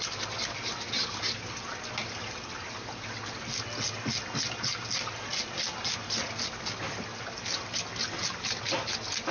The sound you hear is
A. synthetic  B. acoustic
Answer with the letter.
B